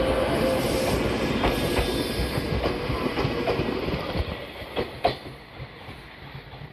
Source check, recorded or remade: recorded